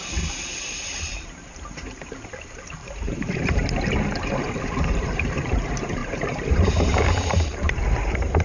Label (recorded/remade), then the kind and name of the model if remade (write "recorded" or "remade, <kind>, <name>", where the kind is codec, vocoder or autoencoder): remade, vocoder, BigVGAN v2